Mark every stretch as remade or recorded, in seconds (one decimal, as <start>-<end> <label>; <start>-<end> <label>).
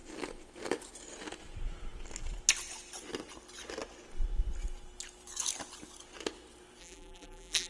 0.0-6.8 recorded; 6.8-7.7 remade